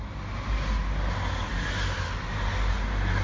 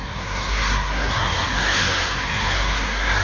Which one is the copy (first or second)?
second